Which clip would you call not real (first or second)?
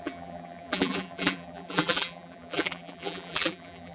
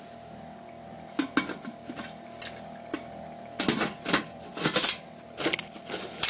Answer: first